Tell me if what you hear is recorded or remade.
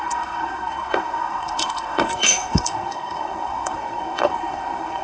remade